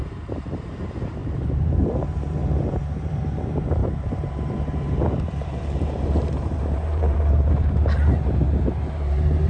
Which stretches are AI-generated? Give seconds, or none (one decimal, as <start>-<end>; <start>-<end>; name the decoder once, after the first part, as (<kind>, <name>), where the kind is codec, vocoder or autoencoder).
0.0-2.4 (vocoder, BigVGAN v2); 3.1-9.5